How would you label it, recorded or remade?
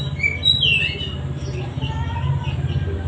recorded